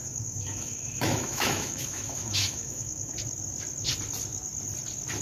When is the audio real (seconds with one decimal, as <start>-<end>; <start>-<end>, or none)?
3.1-5.2